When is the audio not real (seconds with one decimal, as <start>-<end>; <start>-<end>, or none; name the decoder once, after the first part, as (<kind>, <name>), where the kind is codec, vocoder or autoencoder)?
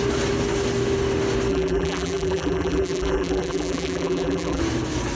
1.5-4.6 (vocoder, BigVGAN v2)